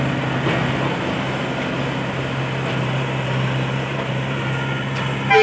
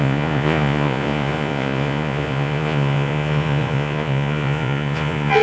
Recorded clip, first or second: first